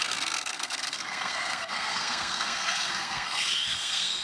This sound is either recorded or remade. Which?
remade